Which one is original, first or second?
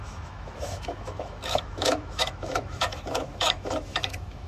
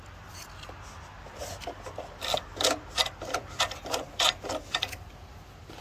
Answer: second